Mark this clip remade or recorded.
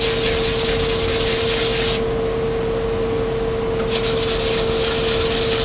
recorded